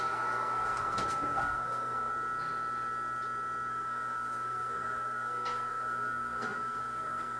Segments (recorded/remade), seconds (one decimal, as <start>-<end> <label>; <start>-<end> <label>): 0.0-2.1 remade; 2.1-3.7 recorded; 3.7-7.4 remade